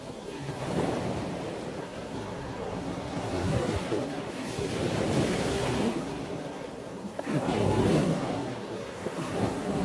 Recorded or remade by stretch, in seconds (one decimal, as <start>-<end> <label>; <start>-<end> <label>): 0.0-0.7 remade; 0.7-1.8 recorded; 1.8-4.7 remade; 4.7-5.3 recorded; 5.3-9.8 remade